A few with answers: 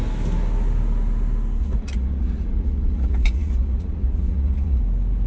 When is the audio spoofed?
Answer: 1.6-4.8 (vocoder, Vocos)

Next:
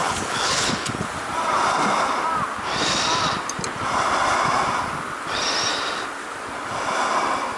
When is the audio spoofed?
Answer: 0.0-1.1 (codec, HILCodec)

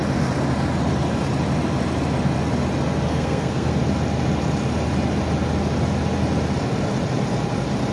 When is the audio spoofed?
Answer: 3.1-3.7 (codec, SNAC)

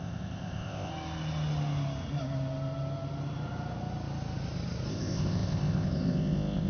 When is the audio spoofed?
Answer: 0.0-0.9 (codec, ZipCodec); 4.9-6.7

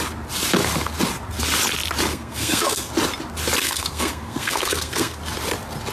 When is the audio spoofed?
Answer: 2.1-2.9 (codec, SNAC); 3.6-5.2